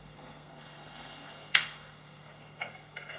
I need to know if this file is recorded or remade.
remade